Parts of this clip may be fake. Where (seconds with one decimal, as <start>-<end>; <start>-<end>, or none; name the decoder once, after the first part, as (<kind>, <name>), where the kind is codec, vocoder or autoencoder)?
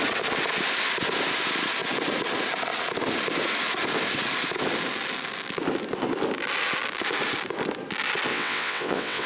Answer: 8.3-9.3 (vocoder, WaveNeXt)